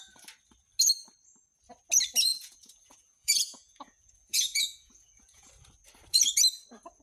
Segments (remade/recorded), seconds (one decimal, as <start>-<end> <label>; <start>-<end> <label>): 0.0-2.3 recorded; 2.3-5.5 remade; 5.5-7.0 recorded